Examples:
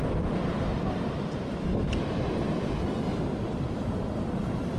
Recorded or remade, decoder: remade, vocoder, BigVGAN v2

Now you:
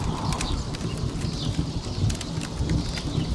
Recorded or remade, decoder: remade, vocoder, BigVGAN v2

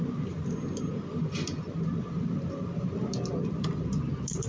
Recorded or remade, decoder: recorded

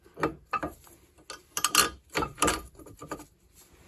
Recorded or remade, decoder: recorded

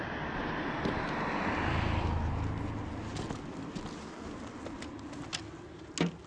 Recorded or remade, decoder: recorded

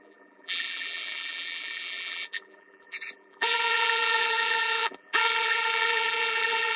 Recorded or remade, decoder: remade, vocoder, BigVGAN v2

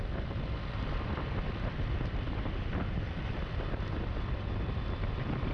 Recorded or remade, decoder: remade, vocoder, BigVGAN v2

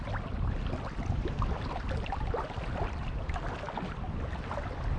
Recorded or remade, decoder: recorded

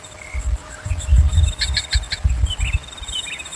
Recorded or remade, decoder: recorded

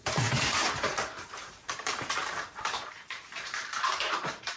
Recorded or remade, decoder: remade, vocoder, BigVGAN v2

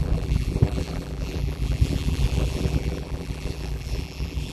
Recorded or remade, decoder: remade, vocoder, BigVGAN v2